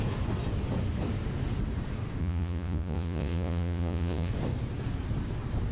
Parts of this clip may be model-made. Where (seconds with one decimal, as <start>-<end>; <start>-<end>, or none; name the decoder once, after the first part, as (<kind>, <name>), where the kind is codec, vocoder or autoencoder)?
2.2-4.3 (vocoder, Vocos)